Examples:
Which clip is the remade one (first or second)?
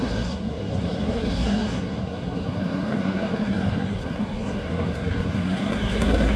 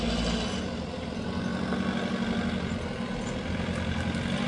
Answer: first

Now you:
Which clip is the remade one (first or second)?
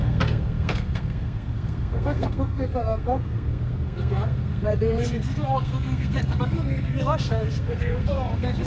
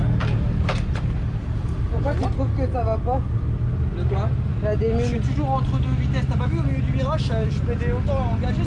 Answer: first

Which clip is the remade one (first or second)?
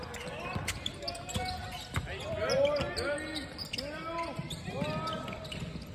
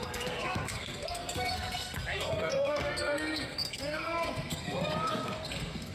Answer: second